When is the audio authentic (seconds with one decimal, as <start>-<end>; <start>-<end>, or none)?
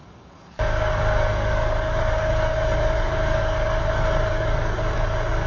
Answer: none